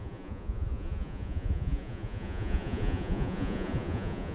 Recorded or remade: remade